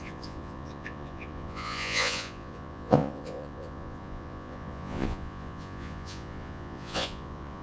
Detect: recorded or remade remade